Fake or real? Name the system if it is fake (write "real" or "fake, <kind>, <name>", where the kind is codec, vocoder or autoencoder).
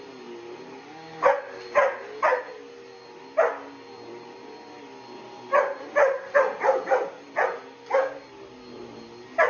real